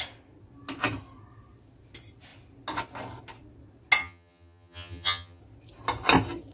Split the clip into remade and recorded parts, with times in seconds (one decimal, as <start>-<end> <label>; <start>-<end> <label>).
0.0-4.0 recorded; 4.0-5.4 remade; 5.4-6.5 recorded